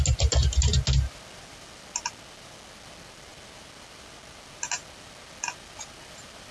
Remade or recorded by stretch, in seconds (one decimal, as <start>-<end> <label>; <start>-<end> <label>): 0.0-6.5 recorded